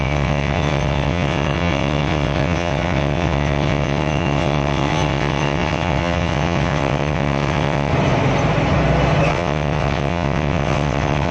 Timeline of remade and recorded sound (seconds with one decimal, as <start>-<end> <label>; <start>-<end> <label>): 0.0-7.9 remade; 7.9-9.3 recorded; 9.3-11.3 remade